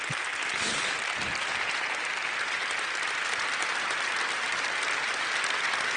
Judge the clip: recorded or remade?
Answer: recorded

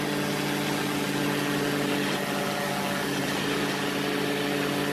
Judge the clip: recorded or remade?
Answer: recorded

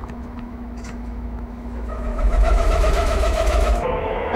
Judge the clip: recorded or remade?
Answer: remade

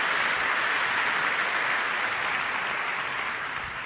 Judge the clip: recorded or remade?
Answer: recorded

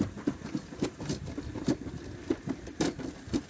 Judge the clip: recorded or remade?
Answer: recorded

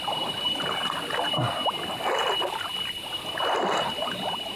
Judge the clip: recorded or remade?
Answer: recorded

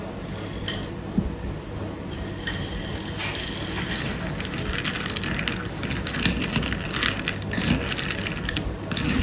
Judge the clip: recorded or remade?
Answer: recorded